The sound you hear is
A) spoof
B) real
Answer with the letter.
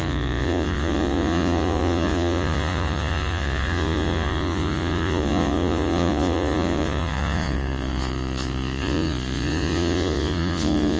A